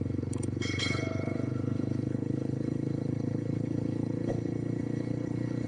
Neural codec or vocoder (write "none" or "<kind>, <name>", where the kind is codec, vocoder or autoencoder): codec, HILCodec